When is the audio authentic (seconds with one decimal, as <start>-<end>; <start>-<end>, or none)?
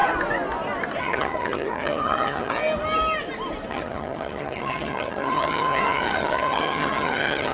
0.0-1.0; 2.6-3.7